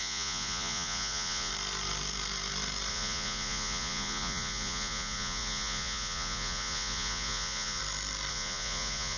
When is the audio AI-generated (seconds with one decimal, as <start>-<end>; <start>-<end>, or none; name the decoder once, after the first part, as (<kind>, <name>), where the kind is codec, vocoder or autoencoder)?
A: 0.0-1.5 (vocoder, Vocos); 2.9-7.8; 8.3-9.2